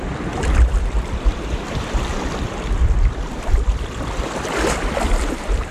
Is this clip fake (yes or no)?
yes